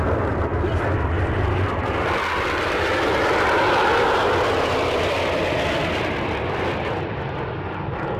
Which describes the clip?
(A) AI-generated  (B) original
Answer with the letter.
B